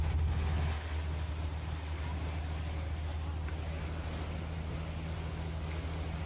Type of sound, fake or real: real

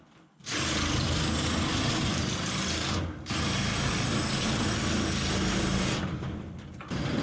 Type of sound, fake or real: real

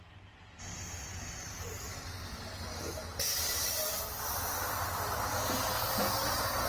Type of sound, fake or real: real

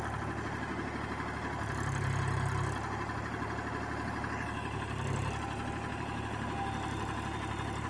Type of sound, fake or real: real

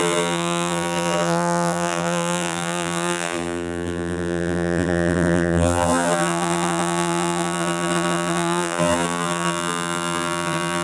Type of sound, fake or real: fake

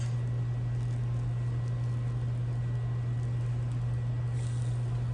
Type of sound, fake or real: real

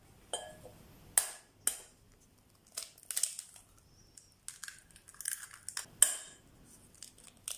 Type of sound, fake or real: real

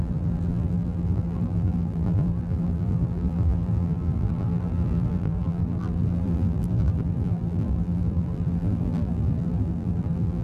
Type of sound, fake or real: fake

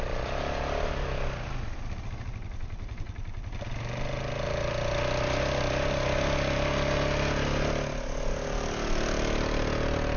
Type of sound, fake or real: real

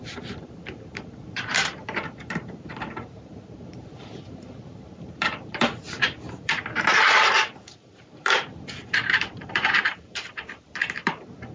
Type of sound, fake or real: fake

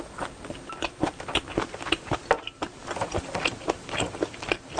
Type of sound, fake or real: real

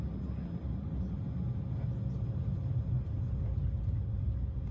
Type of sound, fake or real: real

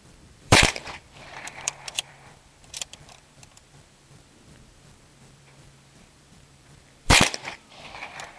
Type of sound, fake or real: fake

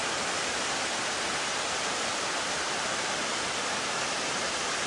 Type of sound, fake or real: real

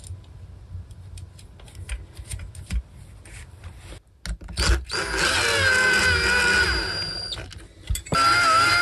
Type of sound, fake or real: real